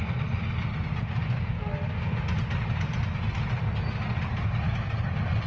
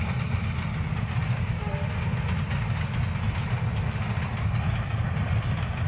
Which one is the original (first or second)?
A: first